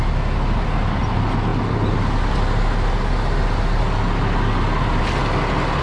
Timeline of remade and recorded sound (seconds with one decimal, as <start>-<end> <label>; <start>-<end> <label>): 0.0-5.8 recorded